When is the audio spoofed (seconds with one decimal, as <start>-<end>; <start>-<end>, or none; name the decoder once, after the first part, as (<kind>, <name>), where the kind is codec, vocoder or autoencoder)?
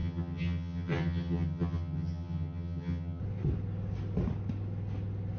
0.0-3.2 (vocoder, HiFi-GAN)